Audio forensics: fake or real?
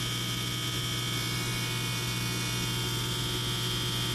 real